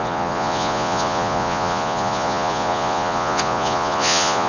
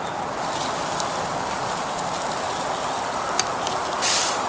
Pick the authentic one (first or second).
second